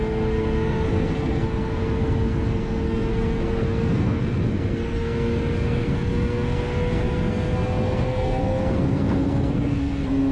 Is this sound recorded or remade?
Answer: remade